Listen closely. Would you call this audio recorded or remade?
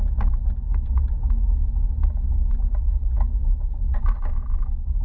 recorded